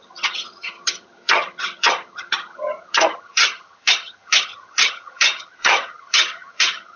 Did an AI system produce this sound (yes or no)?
yes